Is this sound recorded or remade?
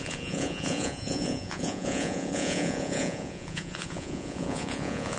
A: remade